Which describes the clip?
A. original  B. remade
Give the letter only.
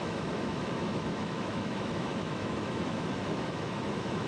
B